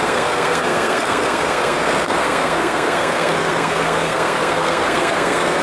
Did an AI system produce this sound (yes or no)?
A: yes